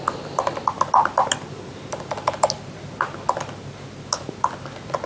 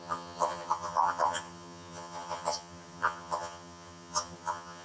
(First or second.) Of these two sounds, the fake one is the second